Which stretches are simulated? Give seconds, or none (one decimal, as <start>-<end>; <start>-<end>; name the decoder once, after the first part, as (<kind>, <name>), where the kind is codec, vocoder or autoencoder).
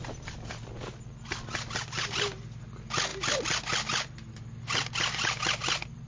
none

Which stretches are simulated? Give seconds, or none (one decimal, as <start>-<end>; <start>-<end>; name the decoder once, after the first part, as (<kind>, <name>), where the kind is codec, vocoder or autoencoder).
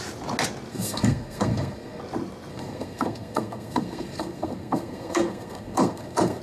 0.7-2.0 (codec, SNAC); 2.5-6.4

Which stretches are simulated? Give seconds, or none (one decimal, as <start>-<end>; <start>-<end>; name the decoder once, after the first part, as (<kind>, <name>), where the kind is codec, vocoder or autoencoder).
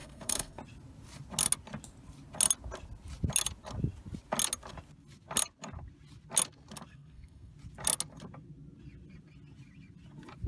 0.0-0.6 (codec, SNAC); 6.9-7.5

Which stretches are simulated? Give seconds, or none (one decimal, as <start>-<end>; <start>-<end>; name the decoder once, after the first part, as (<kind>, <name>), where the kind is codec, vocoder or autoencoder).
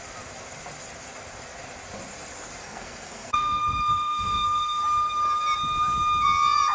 2.6-4.8 (codec, SNAC)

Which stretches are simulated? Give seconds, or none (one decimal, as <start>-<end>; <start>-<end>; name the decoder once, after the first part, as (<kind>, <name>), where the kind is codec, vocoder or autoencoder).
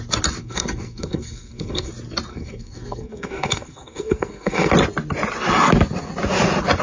0.4-1.9 (codec, SNAC); 2.3-4.7